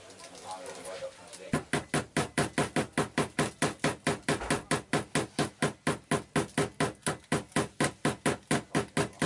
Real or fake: real